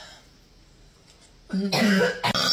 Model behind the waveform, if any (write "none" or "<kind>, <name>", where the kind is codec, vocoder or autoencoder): none